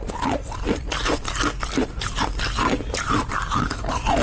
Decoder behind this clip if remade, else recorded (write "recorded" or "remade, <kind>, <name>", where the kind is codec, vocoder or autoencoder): recorded